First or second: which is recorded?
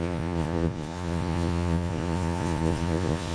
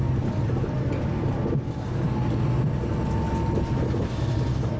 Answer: second